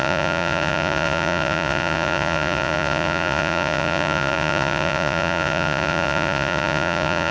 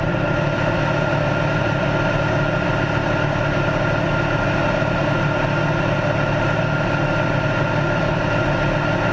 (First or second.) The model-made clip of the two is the first